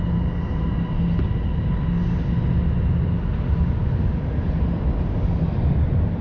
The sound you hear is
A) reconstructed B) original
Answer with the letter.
B